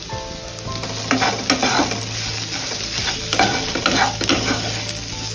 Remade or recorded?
recorded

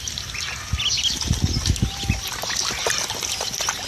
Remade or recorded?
recorded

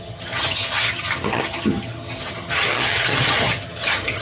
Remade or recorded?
remade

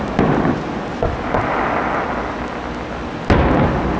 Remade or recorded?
recorded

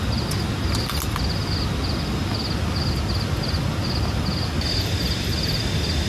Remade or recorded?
recorded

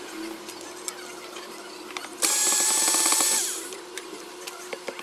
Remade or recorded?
remade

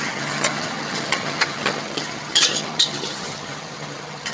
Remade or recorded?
remade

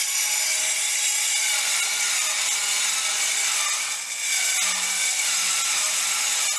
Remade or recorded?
recorded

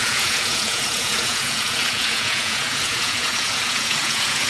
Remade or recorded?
remade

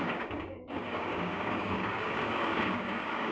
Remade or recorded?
remade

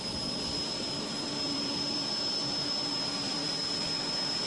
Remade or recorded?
remade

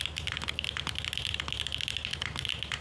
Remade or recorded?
recorded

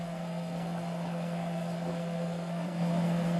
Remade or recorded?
remade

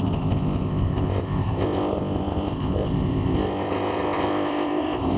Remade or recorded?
remade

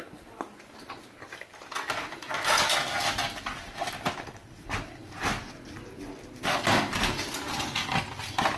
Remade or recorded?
recorded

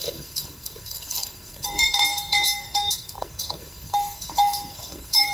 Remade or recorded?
remade